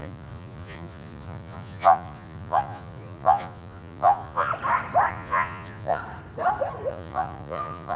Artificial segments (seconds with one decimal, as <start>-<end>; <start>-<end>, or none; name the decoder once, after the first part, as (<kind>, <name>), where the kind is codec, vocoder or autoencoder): 0.0-4.5 (vocoder, Vocos); 5.1-6.0; 6.9-8.0